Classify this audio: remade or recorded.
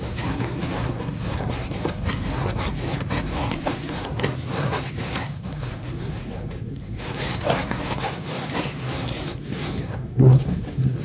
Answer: remade